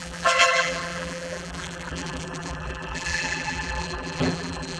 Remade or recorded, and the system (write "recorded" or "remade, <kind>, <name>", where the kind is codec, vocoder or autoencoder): remade, vocoder, BigVGAN v2